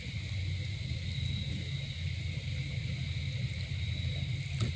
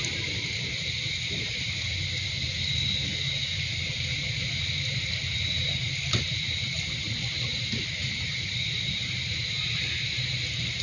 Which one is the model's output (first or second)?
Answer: second